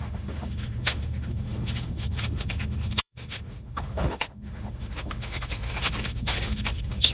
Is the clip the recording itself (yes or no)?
no